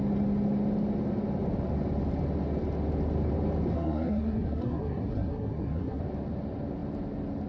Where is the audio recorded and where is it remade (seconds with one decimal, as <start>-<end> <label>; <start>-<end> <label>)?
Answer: 0.0-3.7 recorded; 3.7-6.0 remade; 6.0-7.5 recorded